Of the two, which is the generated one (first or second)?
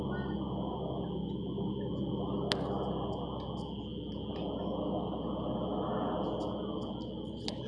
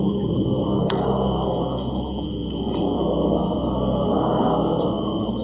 second